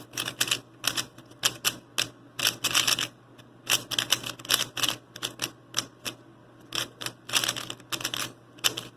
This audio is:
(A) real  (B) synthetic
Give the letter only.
A